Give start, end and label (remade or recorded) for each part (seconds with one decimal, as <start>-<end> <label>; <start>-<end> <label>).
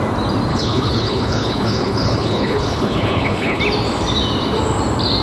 0.0-0.5 recorded; 0.5-3.6 remade; 3.6-5.2 recorded